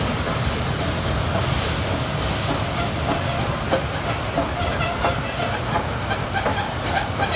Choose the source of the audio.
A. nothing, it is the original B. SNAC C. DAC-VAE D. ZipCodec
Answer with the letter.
A